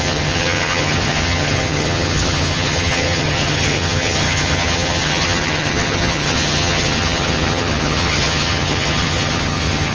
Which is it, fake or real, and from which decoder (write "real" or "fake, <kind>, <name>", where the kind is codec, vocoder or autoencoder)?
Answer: fake, vocoder, HiFi-GAN